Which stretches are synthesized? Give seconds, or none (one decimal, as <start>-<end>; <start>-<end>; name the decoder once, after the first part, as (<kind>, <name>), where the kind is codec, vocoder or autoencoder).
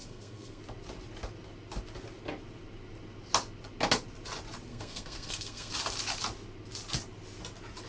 0.0-0.6 (codec, SNAC); 4.7-5.7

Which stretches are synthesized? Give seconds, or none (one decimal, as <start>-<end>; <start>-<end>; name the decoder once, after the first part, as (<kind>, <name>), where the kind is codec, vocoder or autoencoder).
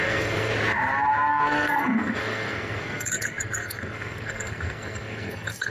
0.0-0.5 (codec, SNAC); 1.3-5.7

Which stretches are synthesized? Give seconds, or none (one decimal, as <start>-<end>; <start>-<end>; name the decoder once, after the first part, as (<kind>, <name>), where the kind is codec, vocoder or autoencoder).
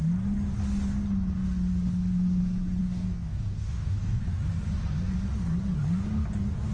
2.8-4.2 (codec, DAC)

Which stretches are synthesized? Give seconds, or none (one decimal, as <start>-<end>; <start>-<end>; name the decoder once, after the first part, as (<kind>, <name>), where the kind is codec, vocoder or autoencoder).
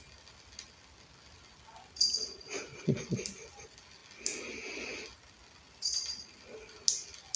none